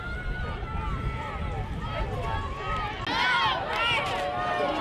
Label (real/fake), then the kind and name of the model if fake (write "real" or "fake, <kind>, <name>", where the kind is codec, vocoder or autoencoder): real